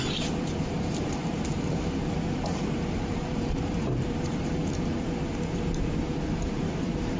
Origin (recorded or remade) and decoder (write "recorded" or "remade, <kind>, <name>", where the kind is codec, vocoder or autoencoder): remade, vocoder, BigVGAN v2